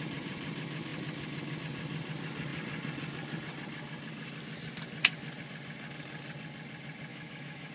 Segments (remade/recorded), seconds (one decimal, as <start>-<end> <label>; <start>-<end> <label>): 0.0-7.1 recorded; 7.1-7.7 remade